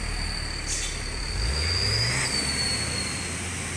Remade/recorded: recorded